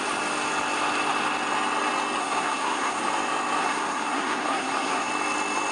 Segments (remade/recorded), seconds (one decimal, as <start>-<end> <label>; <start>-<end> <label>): 0.0-2.2 recorded; 2.2-3.0 remade; 3.0-3.6 recorded; 3.6-5.1 remade; 5.1-5.7 recorded